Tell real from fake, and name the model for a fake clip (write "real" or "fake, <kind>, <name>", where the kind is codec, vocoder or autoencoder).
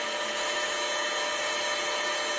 fake, vocoder, Vocos